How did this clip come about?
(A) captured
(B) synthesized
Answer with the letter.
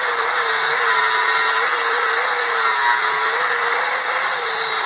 A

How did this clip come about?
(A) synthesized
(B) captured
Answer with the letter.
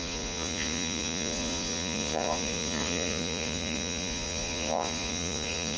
A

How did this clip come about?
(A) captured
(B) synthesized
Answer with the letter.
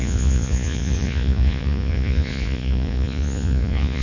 B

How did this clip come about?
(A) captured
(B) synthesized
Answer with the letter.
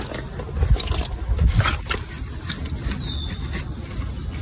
A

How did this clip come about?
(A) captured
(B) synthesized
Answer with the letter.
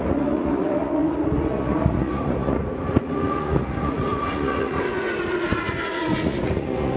B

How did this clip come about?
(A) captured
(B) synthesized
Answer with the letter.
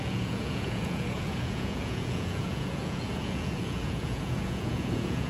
B